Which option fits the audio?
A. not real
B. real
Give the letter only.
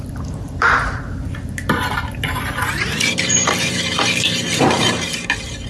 A